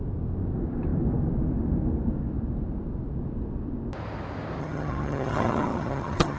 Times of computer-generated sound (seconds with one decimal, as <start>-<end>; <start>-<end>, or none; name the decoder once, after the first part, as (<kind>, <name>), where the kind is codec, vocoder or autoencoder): 4.6-6.4 (vocoder, HiFi-GAN)